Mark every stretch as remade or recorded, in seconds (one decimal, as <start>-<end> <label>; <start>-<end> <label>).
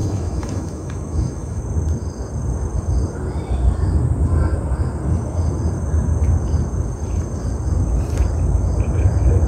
0.0-1.6 remade; 1.6-9.5 recorded